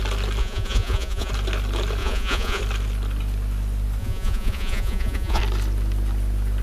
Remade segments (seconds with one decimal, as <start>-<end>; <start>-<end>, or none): 0.4-1.3; 2.0-2.6; 4.0-5.4